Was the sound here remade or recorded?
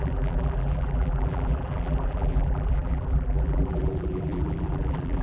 remade